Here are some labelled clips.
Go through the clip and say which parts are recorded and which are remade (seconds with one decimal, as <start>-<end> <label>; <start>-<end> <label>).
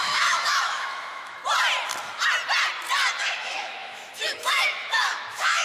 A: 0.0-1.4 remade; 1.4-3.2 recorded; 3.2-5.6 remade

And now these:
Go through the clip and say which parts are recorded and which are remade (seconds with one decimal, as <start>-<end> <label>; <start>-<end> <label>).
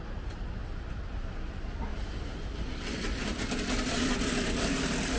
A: 0.0-0.6 recorded; 0.6-1.5 remade; 1.5-1.9 recorded; 1.9-5.2 remade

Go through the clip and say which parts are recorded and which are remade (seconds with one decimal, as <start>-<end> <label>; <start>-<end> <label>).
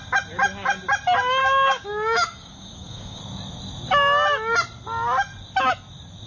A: 0.0-1.4 recorded; 1.4-3.2 remade; 3.2-6.3 recorded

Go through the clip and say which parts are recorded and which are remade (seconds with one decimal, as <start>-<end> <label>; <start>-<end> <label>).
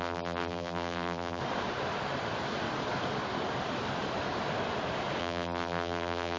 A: 0.0-1.4 remade; 1.4-5.2 recorded; 5.2-6.4 remade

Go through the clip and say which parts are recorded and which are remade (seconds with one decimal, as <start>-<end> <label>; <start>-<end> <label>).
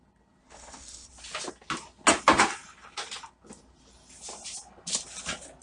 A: 0.0-0.4 recorded; 0.4-1.1 remade; 1.1-5.6 recorded